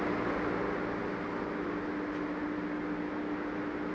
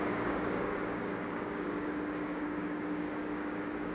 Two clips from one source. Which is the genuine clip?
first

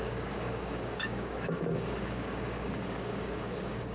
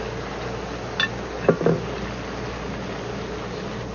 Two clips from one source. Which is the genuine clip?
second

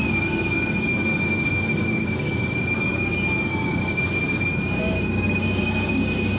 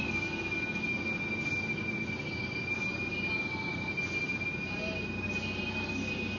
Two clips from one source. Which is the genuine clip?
second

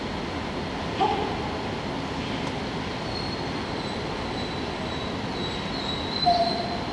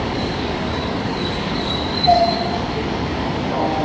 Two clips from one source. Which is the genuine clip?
first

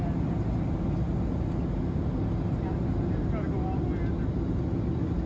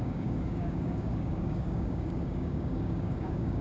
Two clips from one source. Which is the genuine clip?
first